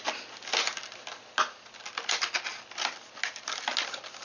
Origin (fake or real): real